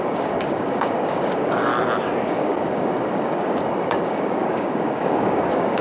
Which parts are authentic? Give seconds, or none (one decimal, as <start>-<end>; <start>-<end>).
1.7-2.3